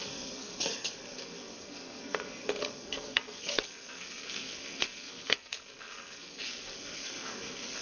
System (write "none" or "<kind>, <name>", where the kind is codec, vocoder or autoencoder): codec, SNAC